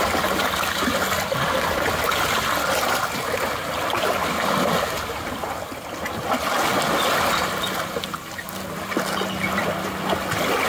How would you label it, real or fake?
real